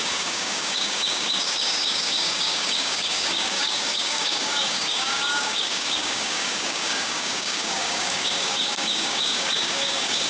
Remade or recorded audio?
remade